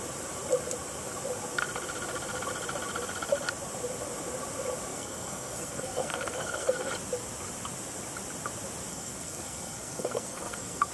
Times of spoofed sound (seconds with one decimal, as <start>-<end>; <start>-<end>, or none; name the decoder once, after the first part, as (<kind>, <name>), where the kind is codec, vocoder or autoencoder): 4.9-6.9 (codec, SNAC); 8.9-10.9